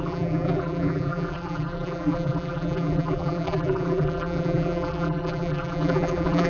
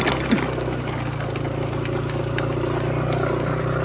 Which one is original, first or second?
second